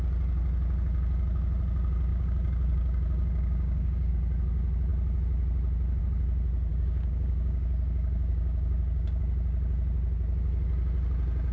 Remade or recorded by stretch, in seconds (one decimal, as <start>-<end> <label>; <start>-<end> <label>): 0.0-2.1 recorded; 2.1-4.1 remade; 4.1-6.7 recorded; 6.7-9.2 remade; 9.2-11.5 recorded